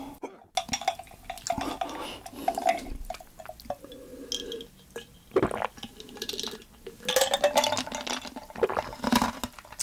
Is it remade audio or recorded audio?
recorded